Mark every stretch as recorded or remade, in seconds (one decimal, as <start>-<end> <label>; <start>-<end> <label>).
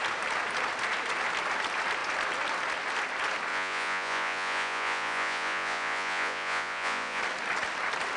0.0-3.5 recorded; 3.5-7.2 remade; 7.2-8.2 recorded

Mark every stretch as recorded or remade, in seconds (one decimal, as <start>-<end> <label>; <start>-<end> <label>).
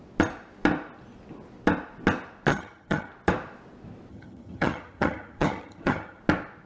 0.0-2.5 recorded; 2.5-3.1 remade; 3.1-4.1 recorded; 4.1-6.2 remade; 6.2-6.7 recorded